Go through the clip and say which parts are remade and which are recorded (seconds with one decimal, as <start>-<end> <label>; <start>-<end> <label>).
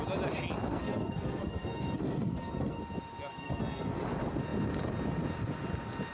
0.0-0.7 recorded; 0.7-2.8 remade; 2.8-3.3 recorded; 3.3-4.0 remade; 4.0-6.1 recorded